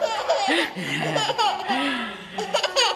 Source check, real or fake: real